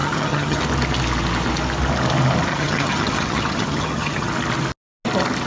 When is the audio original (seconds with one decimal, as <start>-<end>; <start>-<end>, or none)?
0.6-2.5; 4.3-5.5